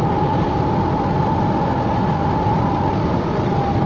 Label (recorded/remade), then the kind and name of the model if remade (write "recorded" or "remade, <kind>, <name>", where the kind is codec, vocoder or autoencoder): recorded